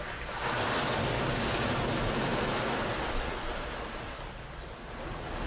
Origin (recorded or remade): recorded